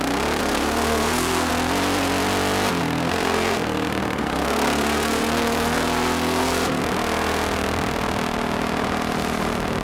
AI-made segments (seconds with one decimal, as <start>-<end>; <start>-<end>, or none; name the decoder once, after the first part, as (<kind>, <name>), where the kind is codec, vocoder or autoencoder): 0.4-1.5 (codec, SNAC); 2.8-6.8